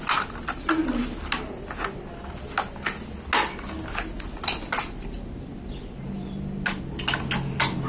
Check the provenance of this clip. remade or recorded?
recorded